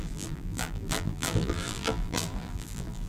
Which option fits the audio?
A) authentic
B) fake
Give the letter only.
B